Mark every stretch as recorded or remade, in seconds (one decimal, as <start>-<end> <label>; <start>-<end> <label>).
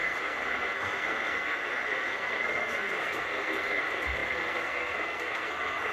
0.0-5.9 remade